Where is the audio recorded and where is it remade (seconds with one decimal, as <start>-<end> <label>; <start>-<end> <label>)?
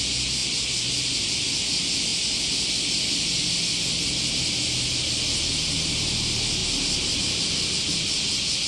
0.0-0.4 recorded; 0.4-1.2 remade; 1.2-6.6 recorded; 6.6-7.7 remade; 7.7-8.7 recorded